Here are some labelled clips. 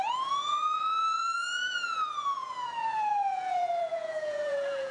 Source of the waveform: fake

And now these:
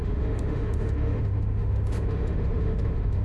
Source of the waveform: fake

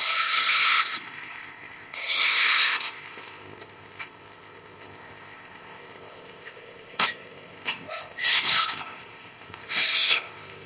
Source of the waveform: fake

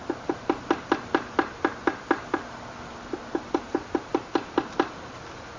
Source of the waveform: real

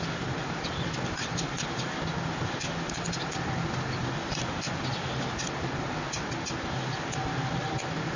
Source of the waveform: real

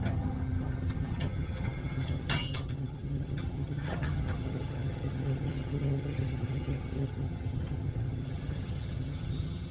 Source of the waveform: fake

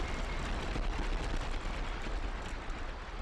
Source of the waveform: real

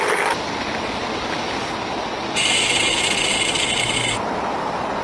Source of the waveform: real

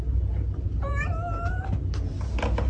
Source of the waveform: real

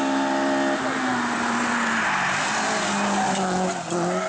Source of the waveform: real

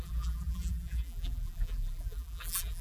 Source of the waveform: fake